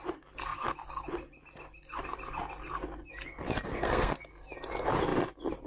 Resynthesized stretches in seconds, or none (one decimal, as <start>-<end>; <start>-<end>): 3.7-4.2